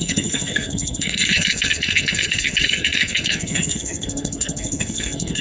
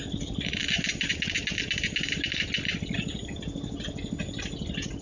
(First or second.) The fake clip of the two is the first